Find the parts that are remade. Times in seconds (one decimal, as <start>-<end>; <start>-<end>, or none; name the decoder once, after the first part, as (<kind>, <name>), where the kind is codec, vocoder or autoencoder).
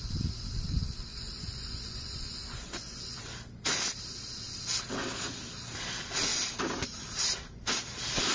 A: 1.1-3.2 (vocoder, Vocos)